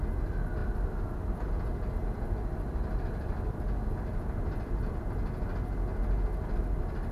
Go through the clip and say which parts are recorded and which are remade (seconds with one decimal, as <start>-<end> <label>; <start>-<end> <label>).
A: 0.0-7.1 recorded